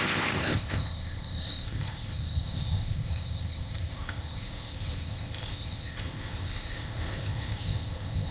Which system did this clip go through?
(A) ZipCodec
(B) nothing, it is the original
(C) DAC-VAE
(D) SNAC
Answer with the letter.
A